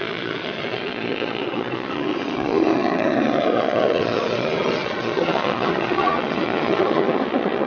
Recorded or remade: remade